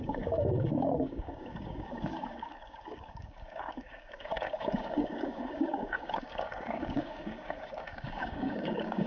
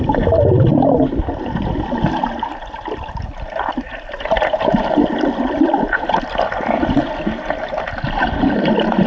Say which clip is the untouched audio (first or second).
second